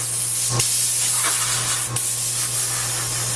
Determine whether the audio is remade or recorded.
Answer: recorded